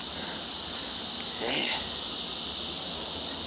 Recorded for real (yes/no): yes